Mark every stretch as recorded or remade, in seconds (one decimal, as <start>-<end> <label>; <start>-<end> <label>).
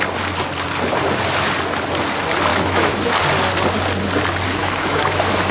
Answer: 0.0-2.5 recorded; 2.5-3.1 remade; 3.1-4.6 recorded; 4.6-5.5 remade